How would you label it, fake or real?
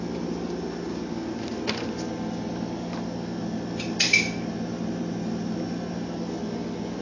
real